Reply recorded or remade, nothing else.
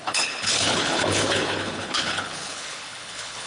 remade